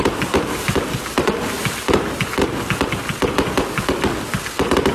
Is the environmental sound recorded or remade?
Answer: remade